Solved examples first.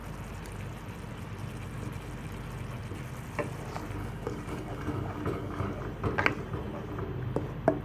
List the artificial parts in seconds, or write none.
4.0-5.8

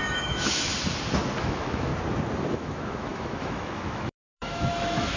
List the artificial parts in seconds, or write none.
0.0-0.7; 1.4-1.9; 2.5-5.2